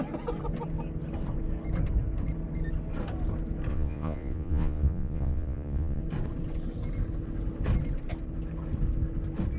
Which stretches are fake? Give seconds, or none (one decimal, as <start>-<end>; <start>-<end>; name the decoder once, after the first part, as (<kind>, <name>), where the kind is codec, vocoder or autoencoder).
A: 3.7-6.0 (vocoder, Vocos)